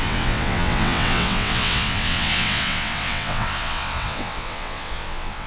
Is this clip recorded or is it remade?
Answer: remade